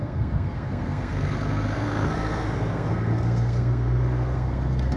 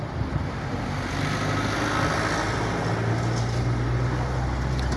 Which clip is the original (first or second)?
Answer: second